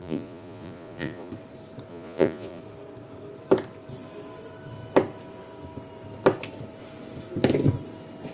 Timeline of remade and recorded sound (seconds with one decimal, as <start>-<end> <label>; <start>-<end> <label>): 0.0-1.3 remade; 1.3-1.9 recorded; 1.9-2.6 remade; 2.6-8.3 recorded